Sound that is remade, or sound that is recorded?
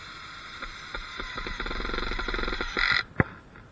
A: recorded